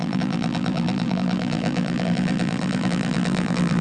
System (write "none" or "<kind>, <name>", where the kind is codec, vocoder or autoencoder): vocoder, BigVGAN v2